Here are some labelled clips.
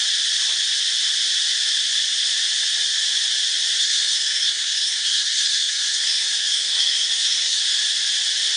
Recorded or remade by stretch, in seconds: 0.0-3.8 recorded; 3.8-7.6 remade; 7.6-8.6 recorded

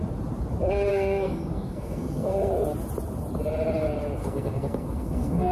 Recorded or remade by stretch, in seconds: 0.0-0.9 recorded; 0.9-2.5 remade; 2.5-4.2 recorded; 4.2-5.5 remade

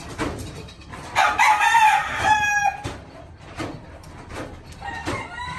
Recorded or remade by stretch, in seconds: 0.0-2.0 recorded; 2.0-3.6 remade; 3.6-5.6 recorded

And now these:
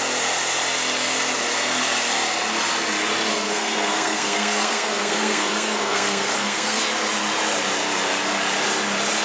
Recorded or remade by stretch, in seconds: 0.0-3.3 recorded; 3.3-6.8 remade; 6.8-9.2 recorded